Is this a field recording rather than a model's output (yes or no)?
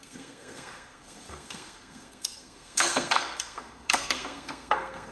no